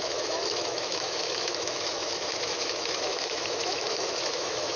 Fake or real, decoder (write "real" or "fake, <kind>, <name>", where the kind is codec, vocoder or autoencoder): fake, autoencoder, DAC-VAE